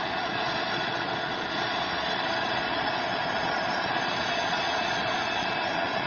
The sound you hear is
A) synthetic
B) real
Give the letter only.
A